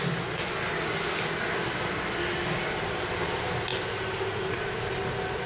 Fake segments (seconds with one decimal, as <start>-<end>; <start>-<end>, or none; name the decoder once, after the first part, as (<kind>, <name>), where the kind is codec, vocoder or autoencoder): none

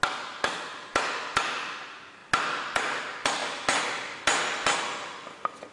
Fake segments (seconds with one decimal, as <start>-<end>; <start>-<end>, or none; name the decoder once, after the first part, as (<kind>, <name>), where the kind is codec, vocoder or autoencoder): none

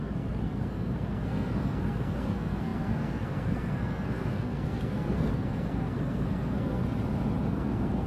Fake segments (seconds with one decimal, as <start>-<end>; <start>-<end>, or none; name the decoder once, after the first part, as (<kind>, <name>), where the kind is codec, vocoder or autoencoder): 0.0-6.8 (codec, SNAC); 7.5-8.1